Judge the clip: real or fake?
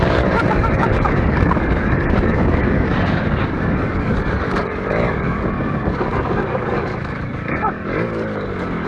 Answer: fake